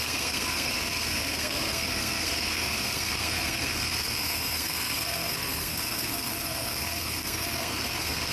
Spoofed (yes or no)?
yes